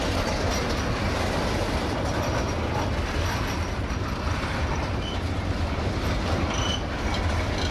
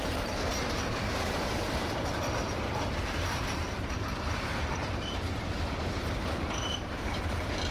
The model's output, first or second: second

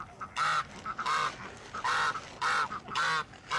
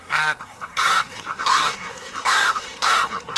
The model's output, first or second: second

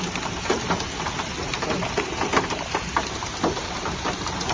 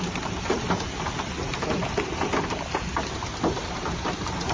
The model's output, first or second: second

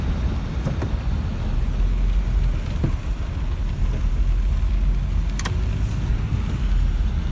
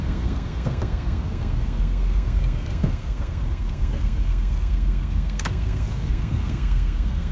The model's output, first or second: second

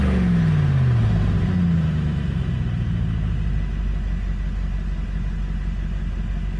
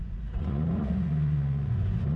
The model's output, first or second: second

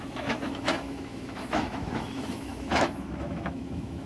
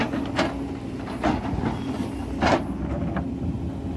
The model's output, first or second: first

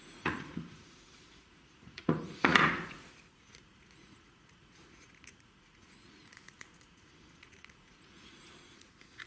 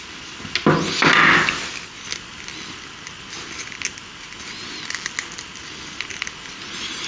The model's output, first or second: first